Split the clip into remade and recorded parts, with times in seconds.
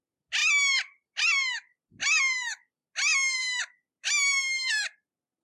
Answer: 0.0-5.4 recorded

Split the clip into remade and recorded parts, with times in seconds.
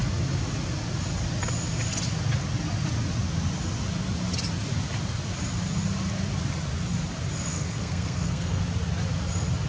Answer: 0.0-7.5 recorded; 7.5-8.6 remade; 8.6-9.7 recorded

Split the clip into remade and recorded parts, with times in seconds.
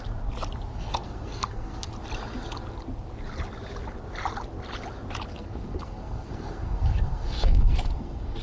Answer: 0.0-0.7 recorded; 0.7-1.9 remade; 1.9-5.3 recorded; 5.3-8.4 remade